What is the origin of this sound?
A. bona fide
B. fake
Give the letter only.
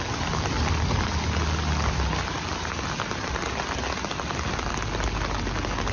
A